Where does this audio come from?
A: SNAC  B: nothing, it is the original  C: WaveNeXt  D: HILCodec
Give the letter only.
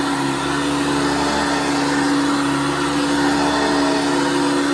B